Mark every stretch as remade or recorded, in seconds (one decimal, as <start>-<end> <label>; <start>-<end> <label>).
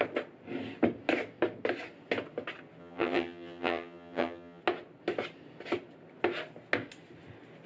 0.0-2.8 recorded; 2.8-4.6 remade; 4.6-7.7 recorded